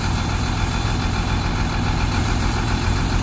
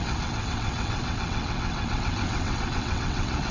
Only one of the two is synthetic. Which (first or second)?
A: second